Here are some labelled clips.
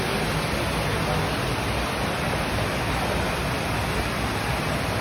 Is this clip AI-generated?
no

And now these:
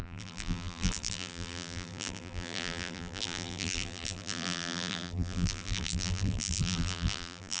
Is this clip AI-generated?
yes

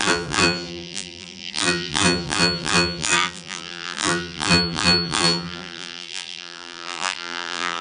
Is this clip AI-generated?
yes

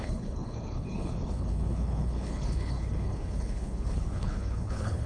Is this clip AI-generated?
yes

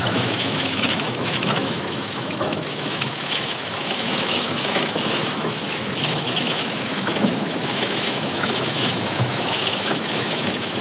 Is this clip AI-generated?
yes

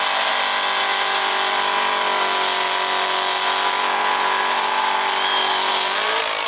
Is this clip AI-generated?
no